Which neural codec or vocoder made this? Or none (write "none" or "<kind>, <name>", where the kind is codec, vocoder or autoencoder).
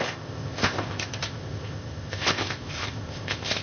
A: codec, ZipCodec